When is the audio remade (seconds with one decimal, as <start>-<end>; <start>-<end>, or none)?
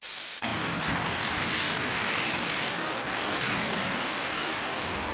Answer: 0.0-5.1